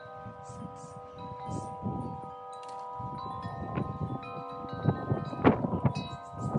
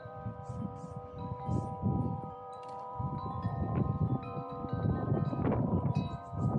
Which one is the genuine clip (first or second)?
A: first